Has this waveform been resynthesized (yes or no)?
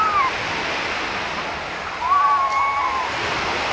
no